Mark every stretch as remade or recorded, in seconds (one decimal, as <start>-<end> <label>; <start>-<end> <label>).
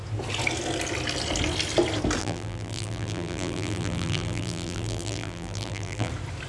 0.0-2.2 recorded; 2.2-6.1 remade; 6.1-6.5 recorded